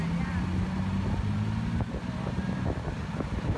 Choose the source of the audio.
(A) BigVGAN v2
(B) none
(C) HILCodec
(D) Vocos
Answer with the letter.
B